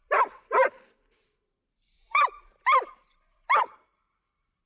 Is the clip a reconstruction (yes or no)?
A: yes